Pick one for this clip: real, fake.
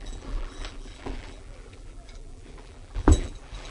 fake